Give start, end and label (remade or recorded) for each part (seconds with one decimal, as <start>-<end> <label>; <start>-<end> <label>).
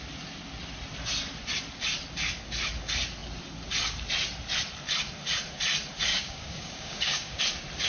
0.0-6.1 recorded; 6.1-7.4 remade; 7.4-7.9 recorded